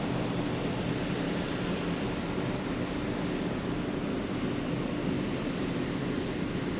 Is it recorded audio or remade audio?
recorded